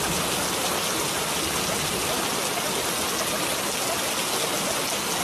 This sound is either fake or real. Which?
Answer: real